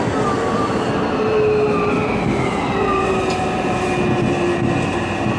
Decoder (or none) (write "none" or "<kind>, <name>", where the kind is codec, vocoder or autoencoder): none